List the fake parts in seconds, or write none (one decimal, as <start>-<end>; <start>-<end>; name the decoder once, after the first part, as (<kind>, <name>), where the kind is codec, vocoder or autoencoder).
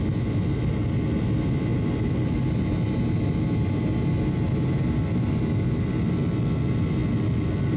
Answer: none